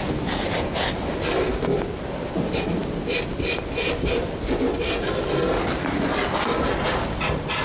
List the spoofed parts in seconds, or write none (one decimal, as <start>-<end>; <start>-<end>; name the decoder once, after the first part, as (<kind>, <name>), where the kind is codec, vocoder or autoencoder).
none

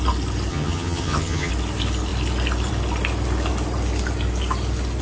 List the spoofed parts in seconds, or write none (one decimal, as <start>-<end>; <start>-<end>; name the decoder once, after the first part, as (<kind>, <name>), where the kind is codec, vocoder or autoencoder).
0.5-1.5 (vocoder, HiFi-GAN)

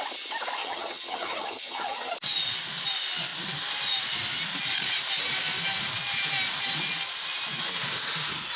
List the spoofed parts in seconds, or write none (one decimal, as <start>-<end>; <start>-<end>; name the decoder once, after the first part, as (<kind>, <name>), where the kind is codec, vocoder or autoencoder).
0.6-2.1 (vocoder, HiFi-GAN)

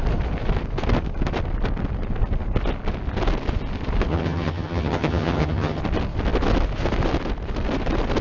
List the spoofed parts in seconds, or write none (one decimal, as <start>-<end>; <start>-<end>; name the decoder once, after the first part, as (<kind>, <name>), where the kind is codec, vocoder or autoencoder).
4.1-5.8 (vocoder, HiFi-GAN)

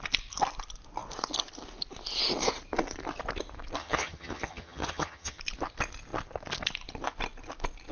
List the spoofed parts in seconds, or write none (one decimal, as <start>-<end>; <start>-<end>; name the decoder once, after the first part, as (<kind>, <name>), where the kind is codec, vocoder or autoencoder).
3.8-5.4 (vocoder, HiFi-GAN)

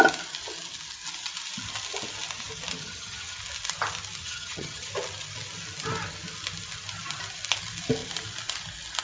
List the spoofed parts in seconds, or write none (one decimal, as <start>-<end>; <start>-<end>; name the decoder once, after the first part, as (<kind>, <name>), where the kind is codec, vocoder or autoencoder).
2.8-3.4 (vocoder, HiFi-GAN); 4.2-4.9

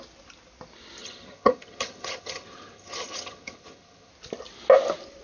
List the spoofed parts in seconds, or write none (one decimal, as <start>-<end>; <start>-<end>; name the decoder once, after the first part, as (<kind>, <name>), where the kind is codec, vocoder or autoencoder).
1.0-4.1 (vocoder, HiFi-GAN)

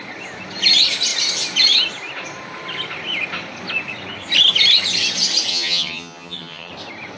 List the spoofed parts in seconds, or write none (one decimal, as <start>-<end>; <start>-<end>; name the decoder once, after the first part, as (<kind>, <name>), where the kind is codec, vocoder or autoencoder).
5.5-6.7 (vocoder, HiFi-GAN)